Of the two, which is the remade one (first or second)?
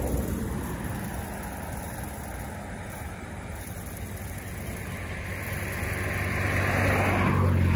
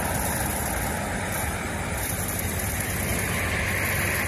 second